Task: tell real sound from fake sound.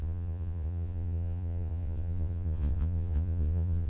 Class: fake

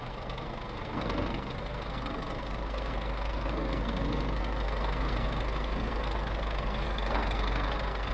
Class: fake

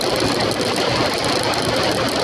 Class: real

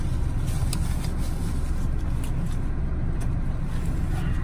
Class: real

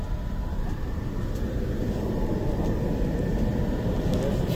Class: real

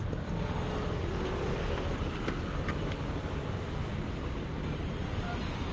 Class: real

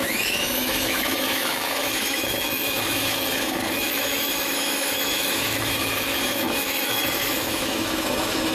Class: fake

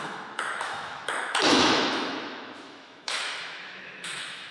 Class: fake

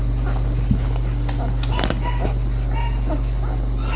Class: real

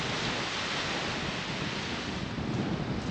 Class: real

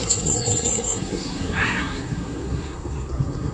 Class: fake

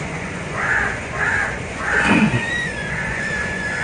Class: fake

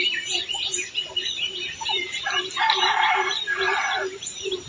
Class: real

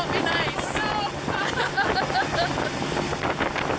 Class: real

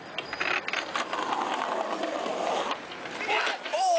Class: real